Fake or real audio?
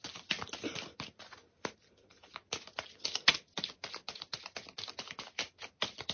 real